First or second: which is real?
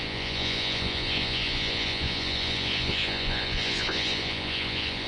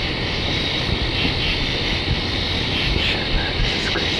second